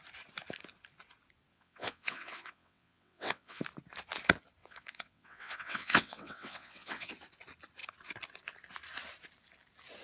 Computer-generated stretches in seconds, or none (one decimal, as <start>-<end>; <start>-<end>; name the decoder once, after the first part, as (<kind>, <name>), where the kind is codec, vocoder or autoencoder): 1.5-3.6 (vocoder, WaveNeXt); 4.6-7.1